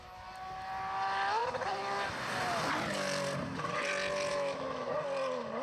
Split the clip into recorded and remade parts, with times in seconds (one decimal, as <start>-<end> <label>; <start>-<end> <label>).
0.0-4.3 recorded; 4.3-4.9 remade; 4.9-5.6 recorded